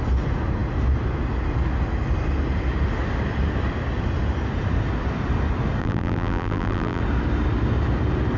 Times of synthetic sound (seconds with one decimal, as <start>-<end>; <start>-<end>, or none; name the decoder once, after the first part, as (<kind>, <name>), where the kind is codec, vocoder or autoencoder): 5.8-7.0 (vocoder, BigVGAN v2)